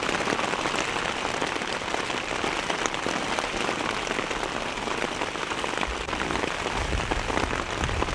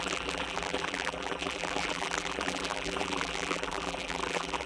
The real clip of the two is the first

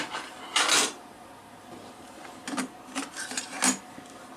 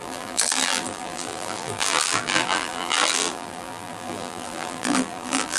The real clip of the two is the first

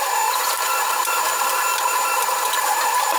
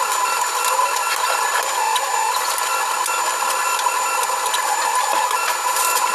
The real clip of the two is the second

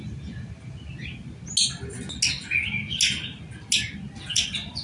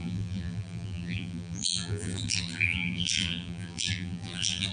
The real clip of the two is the first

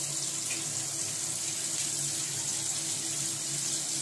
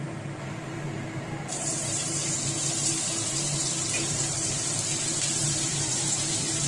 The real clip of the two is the first